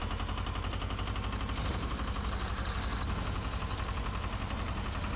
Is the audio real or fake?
real